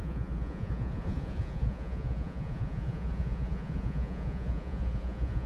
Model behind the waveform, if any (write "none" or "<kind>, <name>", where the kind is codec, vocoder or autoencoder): vocoder, Vocos